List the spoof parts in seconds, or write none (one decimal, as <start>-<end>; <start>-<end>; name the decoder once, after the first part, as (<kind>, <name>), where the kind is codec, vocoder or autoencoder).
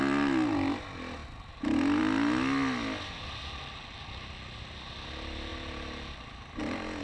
none